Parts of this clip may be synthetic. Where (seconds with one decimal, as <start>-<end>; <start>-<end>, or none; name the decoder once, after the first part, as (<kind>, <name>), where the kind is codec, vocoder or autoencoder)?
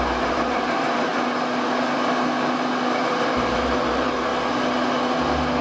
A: 0.0-1.1 (vocoder, BigVGAN v2); 3.1-4.3